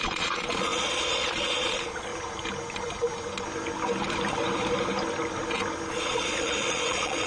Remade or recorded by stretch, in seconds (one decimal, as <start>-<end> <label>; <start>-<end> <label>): 0.0-2.1 remade; 2.1-5.9 recorded; 5.9-7.3 remade